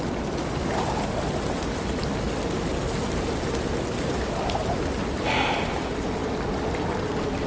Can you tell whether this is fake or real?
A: real